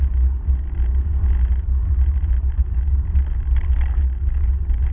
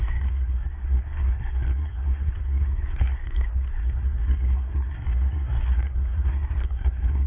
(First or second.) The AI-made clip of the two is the second